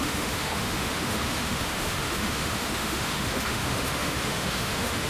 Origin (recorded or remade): remade